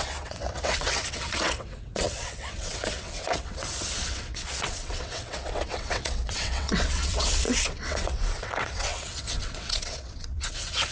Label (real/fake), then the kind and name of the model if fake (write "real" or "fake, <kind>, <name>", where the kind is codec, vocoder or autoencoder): fake, vocoder, WaveNeXt